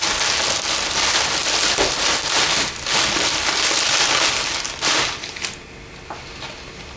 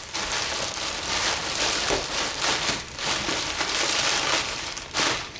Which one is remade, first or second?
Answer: second